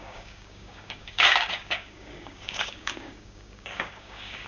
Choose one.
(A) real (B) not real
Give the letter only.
B